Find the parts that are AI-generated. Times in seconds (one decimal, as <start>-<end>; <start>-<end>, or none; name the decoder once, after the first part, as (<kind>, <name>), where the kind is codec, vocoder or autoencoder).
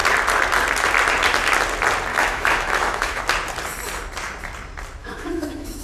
2.1-3.2 (autoencoder, DAC-VAE); 5.0-5.8